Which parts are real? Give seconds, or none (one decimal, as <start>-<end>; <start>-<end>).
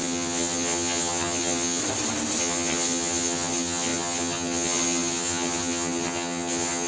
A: 1.8-2.4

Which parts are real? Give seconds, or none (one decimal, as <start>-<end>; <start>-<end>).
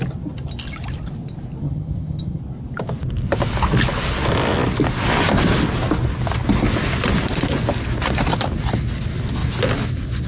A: 0.0-1.6; 2.4-10.3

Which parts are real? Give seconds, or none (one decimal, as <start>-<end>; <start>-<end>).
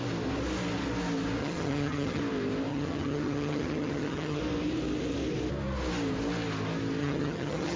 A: 0.0-1.4; 2.2-2.7; 4.4-7.0